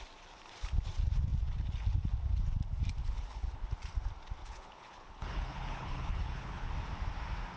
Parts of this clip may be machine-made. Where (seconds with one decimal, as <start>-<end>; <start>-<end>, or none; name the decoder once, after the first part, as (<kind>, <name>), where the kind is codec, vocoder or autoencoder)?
3.0-3.7 (codec, HILCodec); 4.4-6.7